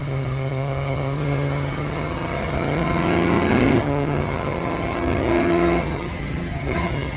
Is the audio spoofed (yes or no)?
yes